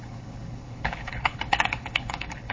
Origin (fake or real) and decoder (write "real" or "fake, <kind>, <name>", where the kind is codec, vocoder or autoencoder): fake, codec, HILCodec